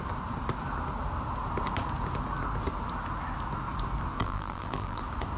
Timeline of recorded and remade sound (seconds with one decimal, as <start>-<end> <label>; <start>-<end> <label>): 0.0-4.2 recorded; 4.2-5.0 remade; 5.0-5.4 recorded